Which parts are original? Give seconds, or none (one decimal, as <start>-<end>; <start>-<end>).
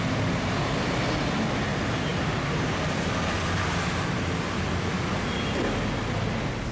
0.0-6.7